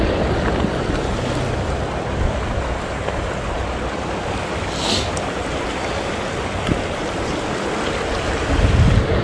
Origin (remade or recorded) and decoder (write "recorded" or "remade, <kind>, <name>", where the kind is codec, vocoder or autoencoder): recorded